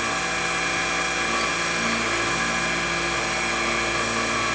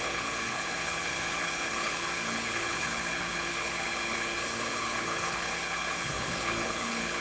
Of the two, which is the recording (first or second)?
first